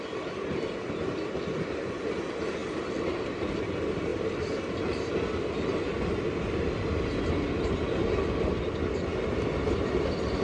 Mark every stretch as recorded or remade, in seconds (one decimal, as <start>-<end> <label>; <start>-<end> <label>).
0.0-10.4 recorded